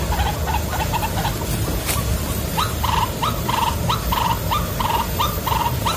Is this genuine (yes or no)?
yes